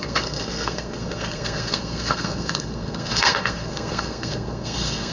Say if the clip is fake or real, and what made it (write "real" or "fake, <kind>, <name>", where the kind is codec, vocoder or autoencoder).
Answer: fake, codec, SNAC